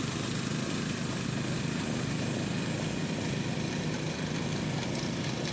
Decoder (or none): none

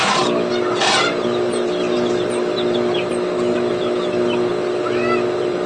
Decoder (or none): none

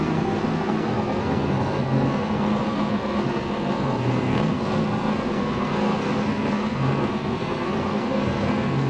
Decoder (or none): codec, SNAC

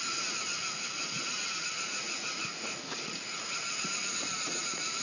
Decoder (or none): vocoder, Vocos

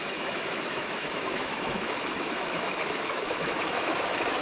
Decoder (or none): autoencoder, DAC-VAE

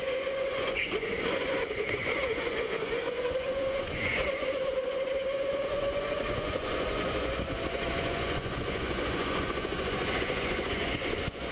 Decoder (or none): vocoder, Vocos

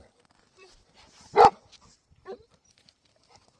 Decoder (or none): none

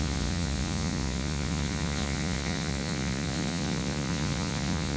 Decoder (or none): vocoder, Vocos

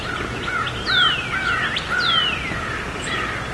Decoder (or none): none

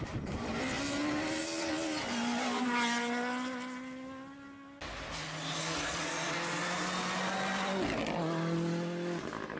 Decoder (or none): none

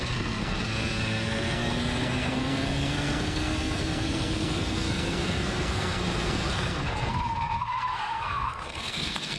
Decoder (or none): codec, SNAC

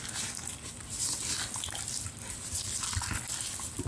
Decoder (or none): none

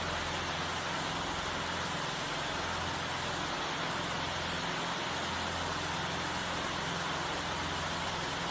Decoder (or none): none